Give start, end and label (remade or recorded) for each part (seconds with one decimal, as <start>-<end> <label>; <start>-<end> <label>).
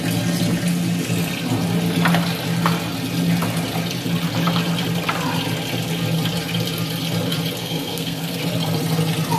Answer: 0.0-7.6 recorded; 7.6-8.4 remade; 8.4-9.4 recorded